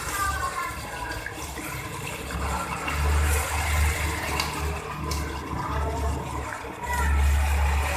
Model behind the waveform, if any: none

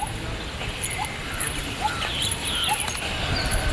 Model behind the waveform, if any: none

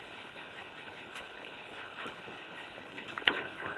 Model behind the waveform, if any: codec, HILCodec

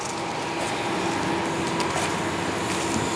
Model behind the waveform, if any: none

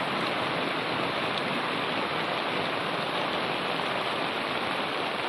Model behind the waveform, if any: vocoder, BigVGAN v2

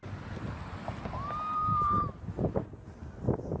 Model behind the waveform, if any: none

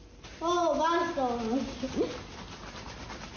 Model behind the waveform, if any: none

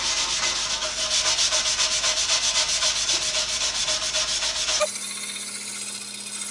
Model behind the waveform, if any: none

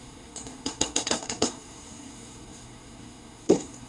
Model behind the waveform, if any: codec, SNAC